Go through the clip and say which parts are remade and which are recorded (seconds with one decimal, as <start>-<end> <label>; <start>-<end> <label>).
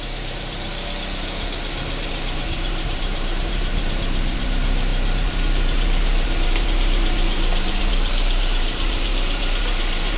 0.0-0.7 remade; 0.7-2.1 recorded; 2.1-10.2 remade